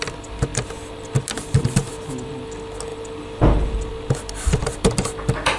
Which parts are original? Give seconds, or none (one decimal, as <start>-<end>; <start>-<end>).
0.0-5.6